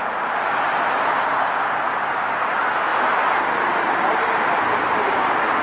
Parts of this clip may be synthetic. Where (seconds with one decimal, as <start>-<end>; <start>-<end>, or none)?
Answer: none